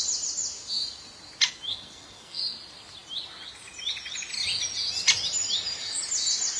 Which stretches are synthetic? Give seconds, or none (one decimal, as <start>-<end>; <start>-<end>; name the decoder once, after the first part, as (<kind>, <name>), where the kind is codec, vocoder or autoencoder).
1.7-2.4 (codec, SNAC)